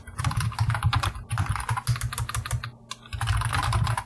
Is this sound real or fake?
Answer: real